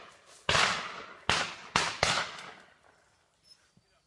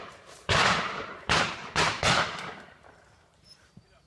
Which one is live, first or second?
first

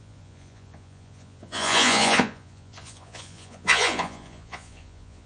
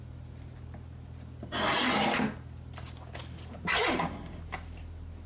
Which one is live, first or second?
second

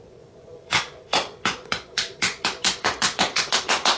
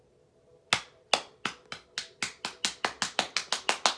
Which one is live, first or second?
second